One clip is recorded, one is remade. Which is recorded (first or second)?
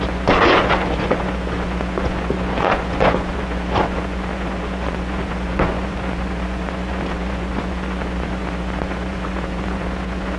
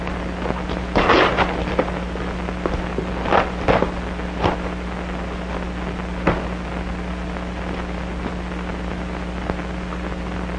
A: second